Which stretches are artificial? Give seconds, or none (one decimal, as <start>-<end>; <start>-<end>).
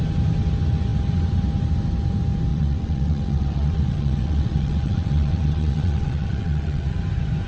2.5-7.0